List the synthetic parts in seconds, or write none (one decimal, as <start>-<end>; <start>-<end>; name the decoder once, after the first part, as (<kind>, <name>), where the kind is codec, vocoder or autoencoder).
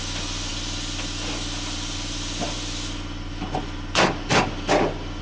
none